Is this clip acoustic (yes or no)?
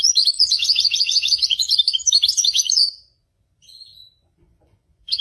no